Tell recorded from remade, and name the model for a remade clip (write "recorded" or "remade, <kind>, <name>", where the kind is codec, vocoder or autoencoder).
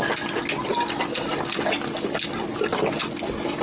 recorded